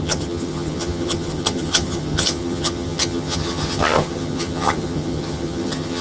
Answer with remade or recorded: remade